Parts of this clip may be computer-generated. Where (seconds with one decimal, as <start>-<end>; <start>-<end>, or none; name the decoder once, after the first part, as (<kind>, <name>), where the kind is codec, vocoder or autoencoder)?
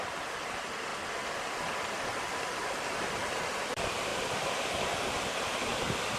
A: 0.0-0.9 (vocoder, BigVGAN v2); 1.9-6.2